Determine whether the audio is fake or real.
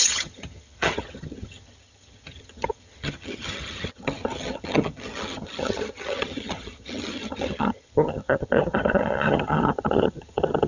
fake